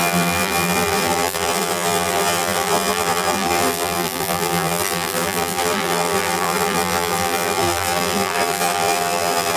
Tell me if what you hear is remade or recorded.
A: remade